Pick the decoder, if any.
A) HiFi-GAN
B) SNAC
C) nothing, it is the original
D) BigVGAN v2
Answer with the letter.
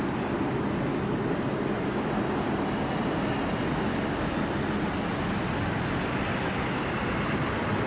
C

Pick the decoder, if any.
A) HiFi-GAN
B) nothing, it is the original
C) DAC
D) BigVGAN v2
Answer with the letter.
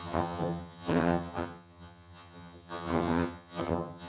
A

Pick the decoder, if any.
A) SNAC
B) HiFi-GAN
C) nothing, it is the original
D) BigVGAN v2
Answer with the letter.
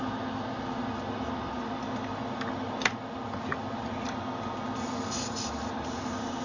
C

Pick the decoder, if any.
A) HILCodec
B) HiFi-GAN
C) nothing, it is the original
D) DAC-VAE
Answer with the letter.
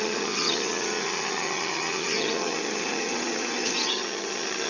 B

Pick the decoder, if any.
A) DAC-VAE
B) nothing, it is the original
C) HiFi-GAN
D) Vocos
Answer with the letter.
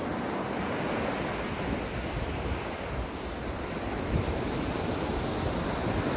B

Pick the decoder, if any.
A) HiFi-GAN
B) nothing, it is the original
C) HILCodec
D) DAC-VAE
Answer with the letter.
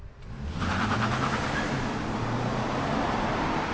B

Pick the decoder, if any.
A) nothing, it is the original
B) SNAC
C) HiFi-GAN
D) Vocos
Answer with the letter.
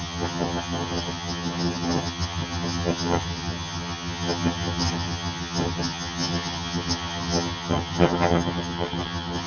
C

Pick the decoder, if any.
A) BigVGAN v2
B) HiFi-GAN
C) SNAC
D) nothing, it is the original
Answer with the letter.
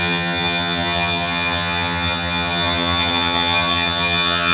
B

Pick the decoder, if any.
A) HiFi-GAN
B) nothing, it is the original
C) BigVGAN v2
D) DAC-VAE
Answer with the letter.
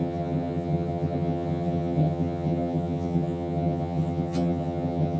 A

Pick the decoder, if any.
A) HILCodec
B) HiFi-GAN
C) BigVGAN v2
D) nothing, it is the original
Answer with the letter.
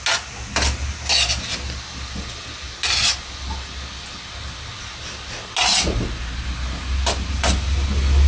D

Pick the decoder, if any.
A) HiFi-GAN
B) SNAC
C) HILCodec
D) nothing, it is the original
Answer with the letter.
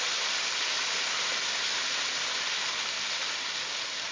D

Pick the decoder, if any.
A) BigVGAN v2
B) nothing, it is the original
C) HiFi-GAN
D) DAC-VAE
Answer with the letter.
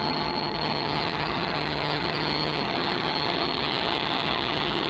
C